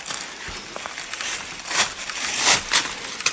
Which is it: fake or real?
real